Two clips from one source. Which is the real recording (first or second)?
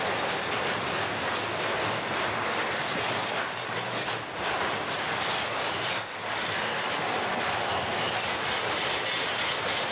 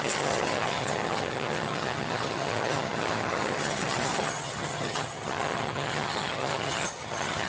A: first